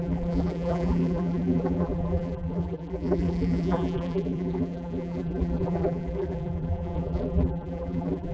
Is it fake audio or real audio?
fake